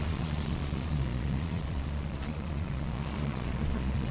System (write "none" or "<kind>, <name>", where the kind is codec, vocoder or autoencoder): vocoder, Vocos